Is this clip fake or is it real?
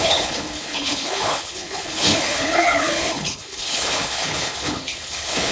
fake